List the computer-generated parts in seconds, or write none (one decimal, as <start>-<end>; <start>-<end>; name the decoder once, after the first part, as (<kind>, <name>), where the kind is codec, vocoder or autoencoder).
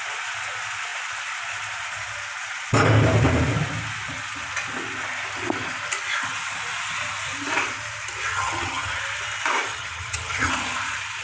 8.3-9.0 (vocoder, HiFi-GAN); 9.7-10.5